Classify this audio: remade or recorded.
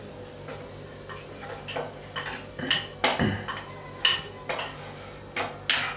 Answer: recorded